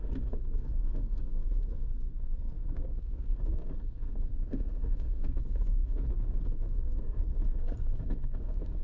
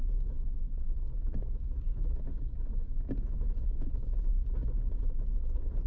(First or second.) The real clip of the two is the second